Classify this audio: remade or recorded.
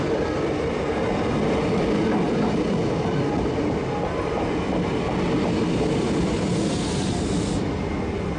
recorded